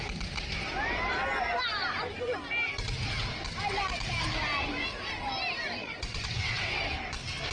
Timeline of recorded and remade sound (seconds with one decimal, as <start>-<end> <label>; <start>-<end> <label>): 0.0-5.8 recorded; 5.8-6.8 remade; 6.8-7.5 recorded